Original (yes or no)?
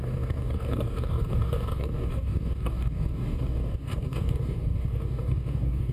no